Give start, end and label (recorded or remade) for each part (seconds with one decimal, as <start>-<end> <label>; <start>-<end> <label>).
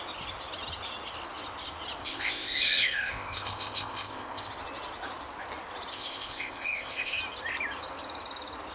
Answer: 0.0-2.0 recorded; 2.0-4.5 remade; 4.5-5.9 recorded; 5.9-7.2 remade; 7.2-8.7 recorded